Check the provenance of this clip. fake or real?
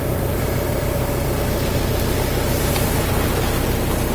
real